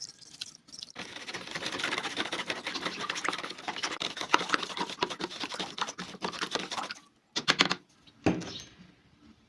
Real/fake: real